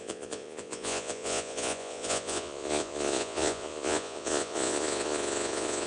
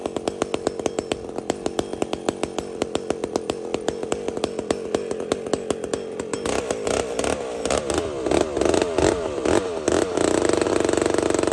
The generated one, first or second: first